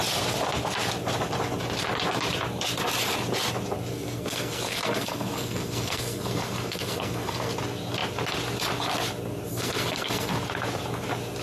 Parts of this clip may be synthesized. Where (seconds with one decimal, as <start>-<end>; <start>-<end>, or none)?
3.9-7.5; 9.5-10.3